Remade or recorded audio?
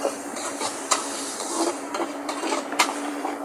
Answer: remade